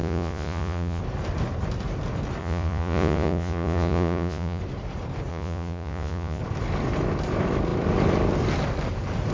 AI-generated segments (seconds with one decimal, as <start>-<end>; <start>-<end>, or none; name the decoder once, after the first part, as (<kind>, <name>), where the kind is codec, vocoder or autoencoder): 0.0-1.0 (vocoder, Vocos); 2.4-4.6; 5.3-6.4